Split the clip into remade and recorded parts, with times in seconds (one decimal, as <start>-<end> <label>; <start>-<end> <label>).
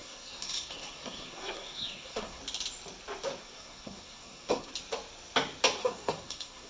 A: 0.0-2.4 remade; 2.4-3.4 recorded; 3.4-4.7 remade; 4.7-5.8 recorded; 5.8-6.7 remade